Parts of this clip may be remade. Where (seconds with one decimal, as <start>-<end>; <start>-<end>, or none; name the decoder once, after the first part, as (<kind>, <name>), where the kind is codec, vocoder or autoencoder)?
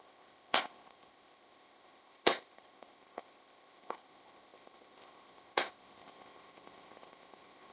0.0-7.7 (codec, ZipCodec)